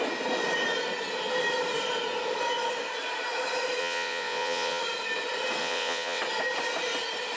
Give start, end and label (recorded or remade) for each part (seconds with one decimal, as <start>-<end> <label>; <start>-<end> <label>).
0.0-3.8 recorded; 3.8-4.8 remade; 4.8-5.6 recorded; 5.6-6.2 remade; 6.2-7.4 recorded